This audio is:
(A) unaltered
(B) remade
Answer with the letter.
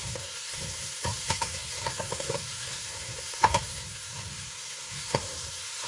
B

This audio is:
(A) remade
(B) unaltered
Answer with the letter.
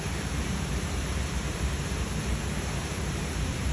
A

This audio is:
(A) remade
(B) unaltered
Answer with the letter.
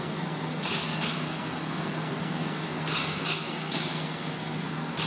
A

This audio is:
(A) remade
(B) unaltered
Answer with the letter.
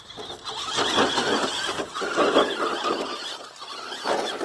B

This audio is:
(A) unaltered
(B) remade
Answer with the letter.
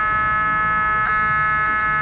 A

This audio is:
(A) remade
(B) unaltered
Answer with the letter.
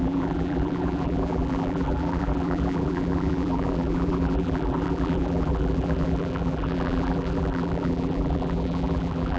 A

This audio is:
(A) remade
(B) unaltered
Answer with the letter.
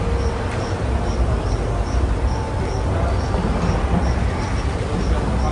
B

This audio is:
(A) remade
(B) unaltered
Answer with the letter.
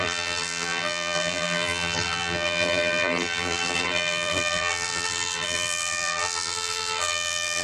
A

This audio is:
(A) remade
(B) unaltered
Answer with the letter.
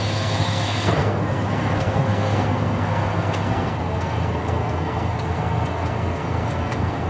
A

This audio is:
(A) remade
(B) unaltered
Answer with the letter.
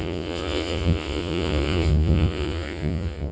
A